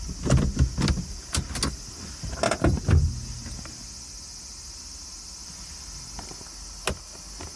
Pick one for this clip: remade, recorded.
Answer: recorded